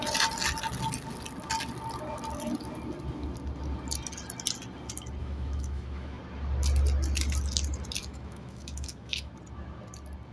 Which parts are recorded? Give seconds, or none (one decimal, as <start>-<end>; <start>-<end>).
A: 0.0-5.2; 6.2-8.0; 9.3-10.3

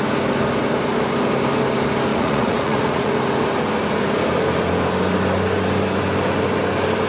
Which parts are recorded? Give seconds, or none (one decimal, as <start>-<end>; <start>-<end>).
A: 0.0-2.1; 3.1-7.1